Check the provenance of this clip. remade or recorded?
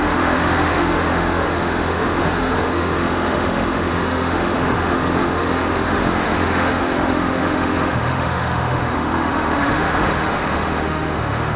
remade